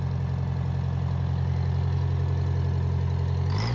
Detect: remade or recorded recorded